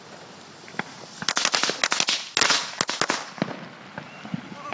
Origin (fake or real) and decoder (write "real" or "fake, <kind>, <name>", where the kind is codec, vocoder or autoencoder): real